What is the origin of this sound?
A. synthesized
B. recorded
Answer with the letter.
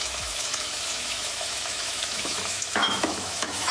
A